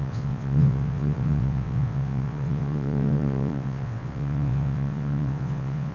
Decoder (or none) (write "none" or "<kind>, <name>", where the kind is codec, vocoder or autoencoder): vocoder, WaveNeXt